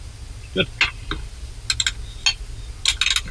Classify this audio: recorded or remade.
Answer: recorded